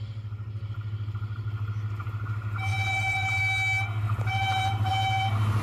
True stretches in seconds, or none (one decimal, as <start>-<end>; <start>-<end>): 0.0-2.7; 3.4-4.3; 4.9-5.6